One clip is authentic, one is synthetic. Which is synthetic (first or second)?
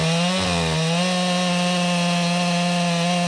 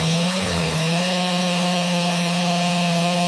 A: second